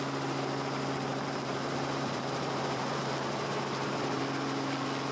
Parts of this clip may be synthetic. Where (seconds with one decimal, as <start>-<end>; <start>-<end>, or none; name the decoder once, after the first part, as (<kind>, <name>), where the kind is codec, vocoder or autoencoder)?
1.1-4.2 (vocoder, BigVGAN v2)